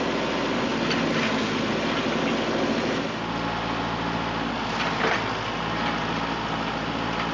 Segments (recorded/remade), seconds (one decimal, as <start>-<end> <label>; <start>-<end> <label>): 0.0-7.3 recorded